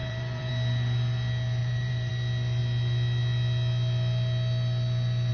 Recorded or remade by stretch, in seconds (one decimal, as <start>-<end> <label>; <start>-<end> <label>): 0.0-0.5 remade; 0.5-1.6 recorded; 1.6-2.1 remade; 2.1-5.3 recorded